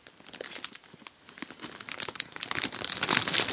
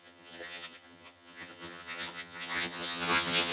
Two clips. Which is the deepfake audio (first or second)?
second